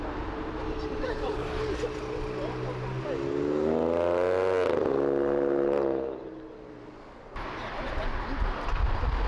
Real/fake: real